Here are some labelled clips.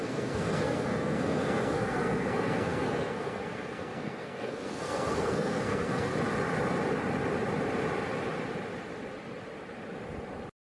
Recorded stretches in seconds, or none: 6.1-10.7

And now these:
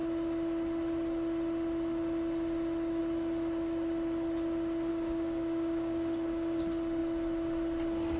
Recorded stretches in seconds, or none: 0.0-4.9; 6.6-8.2

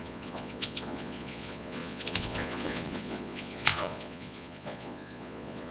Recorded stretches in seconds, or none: none

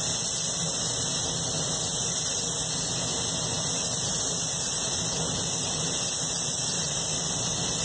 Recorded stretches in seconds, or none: 0.0-6.5; 7.2-7.8

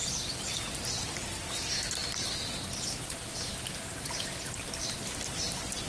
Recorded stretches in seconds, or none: 0.0-5.9

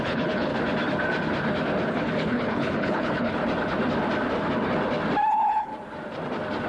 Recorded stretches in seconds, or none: 0.5-1.9; 3.4-5.3; 5.7-6.7

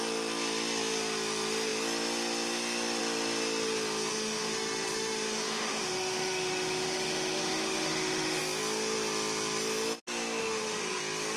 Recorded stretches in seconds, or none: 0.0-4.1; 8.4-10.4; 11.0-11.4